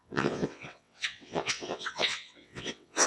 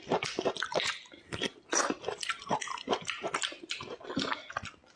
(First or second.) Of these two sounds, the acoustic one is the second